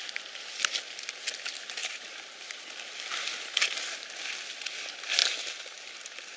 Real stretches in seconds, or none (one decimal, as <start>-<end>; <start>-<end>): 0.0-1.8; 2.6-6.4